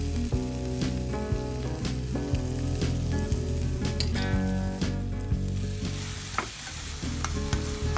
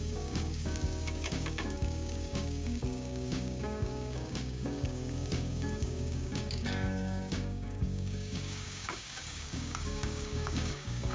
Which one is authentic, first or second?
first